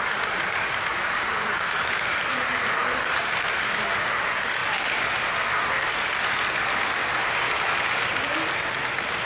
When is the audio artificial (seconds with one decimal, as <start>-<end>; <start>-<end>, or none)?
2.3-3.2